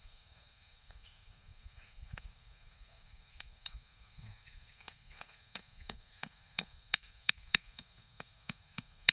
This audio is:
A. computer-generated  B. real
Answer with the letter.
A